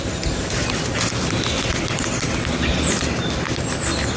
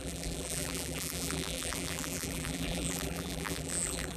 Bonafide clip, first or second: first